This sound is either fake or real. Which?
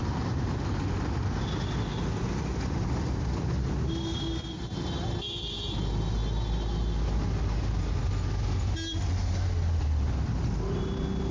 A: real